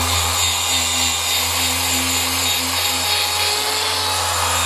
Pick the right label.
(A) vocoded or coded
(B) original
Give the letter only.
B